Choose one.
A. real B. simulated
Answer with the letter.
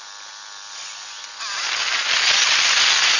A